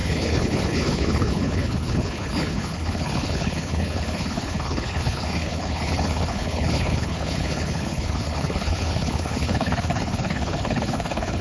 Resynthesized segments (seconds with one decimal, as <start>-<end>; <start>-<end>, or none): 0.0-11.4